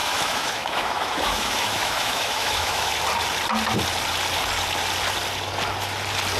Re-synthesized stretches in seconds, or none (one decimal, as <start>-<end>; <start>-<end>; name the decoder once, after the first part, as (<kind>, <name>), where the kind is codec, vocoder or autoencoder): 0.0-2.9 (autoencoder, DAC-VAE)